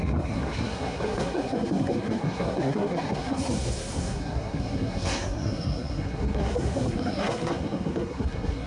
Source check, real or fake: fake